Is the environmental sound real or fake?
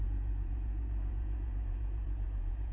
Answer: fake